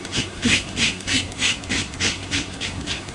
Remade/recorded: remade